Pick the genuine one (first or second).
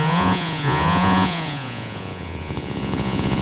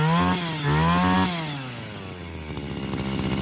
second